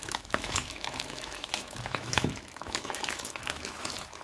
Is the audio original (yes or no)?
no